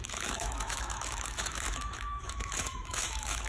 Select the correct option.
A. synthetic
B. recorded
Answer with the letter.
A